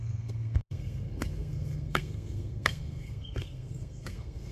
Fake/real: fake